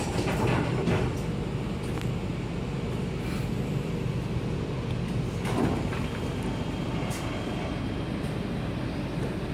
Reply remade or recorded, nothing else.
remade